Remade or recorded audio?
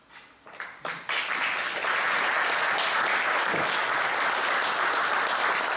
recorded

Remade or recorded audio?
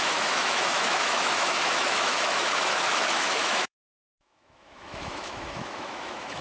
remade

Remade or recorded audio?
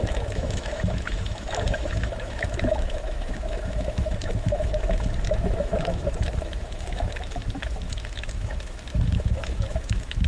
remade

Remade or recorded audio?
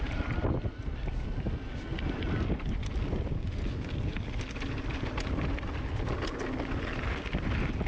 recorded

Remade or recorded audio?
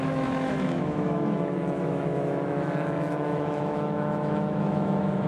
remade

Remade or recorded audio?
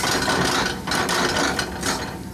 recorded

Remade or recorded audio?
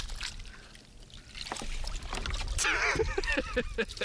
recorded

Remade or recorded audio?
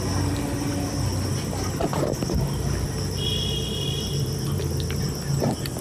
recorded